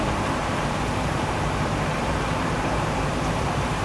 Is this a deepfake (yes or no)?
yes